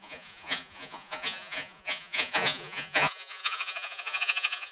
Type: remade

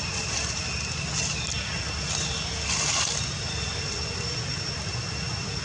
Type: recorded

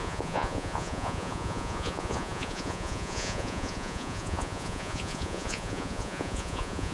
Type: remade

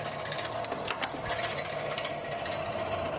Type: recorded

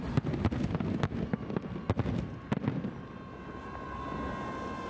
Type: recorded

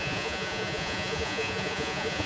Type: remade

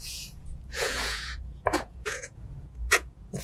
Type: remade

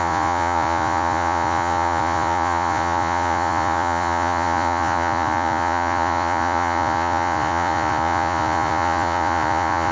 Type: remade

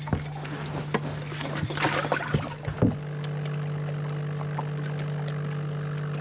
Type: recorded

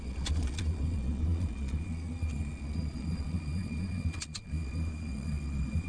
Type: remade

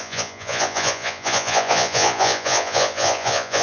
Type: remade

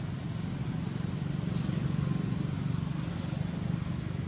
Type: recorded